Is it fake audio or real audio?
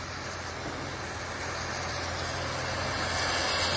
real